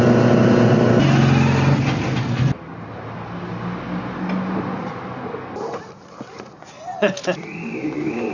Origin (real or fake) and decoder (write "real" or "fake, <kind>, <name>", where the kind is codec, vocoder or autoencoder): real